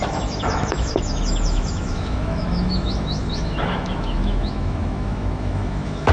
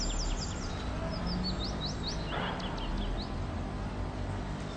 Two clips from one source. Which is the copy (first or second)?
first